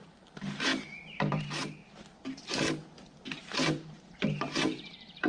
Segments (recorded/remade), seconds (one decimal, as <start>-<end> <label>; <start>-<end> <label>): 0.0-0.7 remade; 0.7-1.2 recorded; 1.2-1.8 remade; 1.8-3.4 recorded; 3.4-5.3 remade